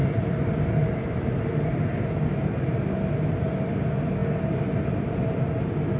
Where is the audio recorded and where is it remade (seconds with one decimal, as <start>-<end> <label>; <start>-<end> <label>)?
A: 0.0-1.8 remade; 1.8-6.0 recorded